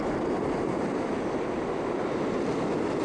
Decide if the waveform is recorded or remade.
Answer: recorded